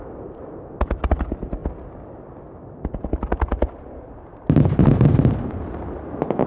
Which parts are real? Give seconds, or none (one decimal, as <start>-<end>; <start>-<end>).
0.0-6.5